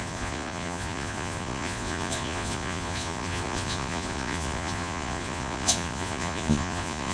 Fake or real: fake